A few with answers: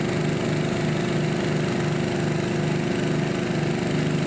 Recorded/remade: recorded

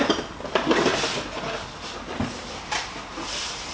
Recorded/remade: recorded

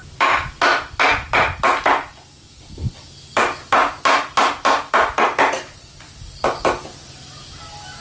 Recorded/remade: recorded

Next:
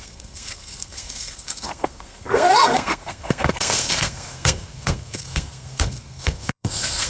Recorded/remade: remade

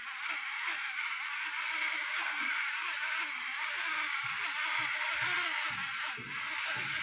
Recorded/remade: recorded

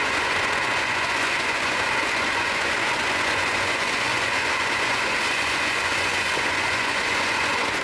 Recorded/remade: remade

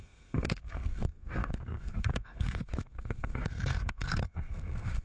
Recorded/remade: remade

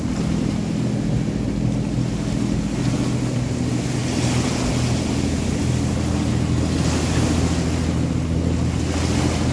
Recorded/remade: recorded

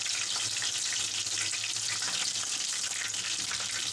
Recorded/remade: recorded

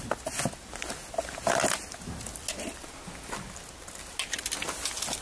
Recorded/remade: recorded